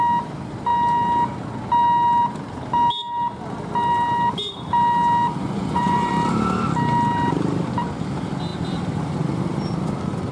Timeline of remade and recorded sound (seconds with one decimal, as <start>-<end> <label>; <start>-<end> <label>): 0.0-5.4 recorded; 5.4-6.1 remade; 6.1-10.3 recorded